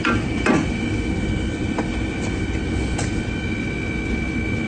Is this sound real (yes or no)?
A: yes